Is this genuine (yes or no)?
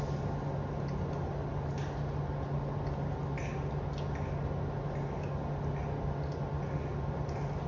yes